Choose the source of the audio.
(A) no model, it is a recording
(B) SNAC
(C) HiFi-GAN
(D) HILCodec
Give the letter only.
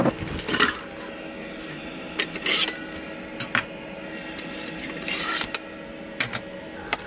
A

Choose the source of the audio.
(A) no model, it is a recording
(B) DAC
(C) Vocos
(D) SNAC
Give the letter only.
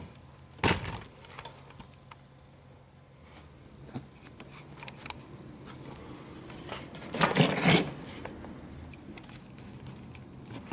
A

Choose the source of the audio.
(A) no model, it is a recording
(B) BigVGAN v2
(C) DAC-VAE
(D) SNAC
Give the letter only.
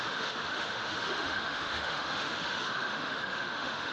C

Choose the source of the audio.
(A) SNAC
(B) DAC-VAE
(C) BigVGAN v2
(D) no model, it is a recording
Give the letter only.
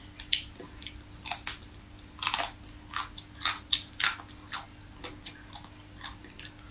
D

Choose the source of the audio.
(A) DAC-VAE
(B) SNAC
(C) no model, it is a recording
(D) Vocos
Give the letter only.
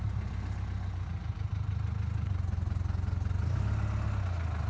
C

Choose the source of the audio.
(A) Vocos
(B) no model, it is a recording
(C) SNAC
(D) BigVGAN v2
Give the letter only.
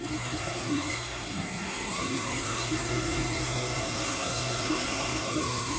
C